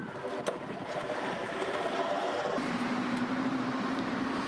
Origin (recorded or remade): remade